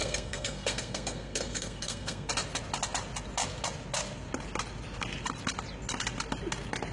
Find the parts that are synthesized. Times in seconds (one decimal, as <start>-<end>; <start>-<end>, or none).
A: 0.0-2.3